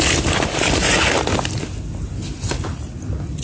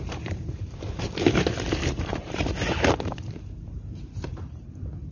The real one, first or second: first